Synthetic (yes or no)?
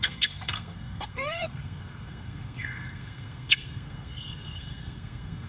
yes